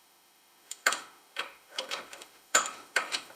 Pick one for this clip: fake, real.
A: fake